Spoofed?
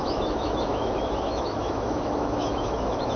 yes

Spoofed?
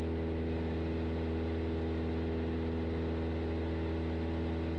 no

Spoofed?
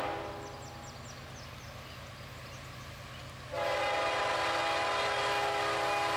no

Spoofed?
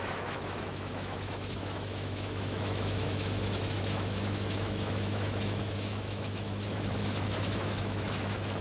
yes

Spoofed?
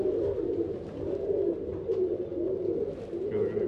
no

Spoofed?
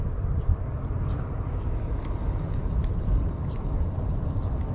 no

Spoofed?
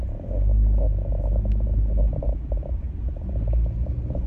no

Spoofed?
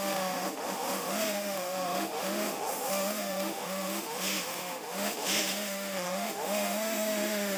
yes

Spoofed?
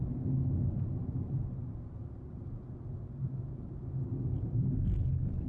no